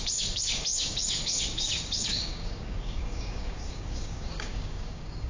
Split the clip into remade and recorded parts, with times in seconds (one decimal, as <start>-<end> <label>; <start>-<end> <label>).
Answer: 0.0-5.3 remade